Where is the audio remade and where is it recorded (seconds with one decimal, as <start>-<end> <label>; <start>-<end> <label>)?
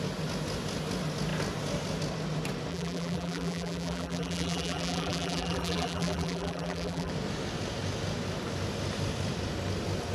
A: 0.0-2.7 recorded; 2.7-7.1 remade; 7.1-10.1 recorded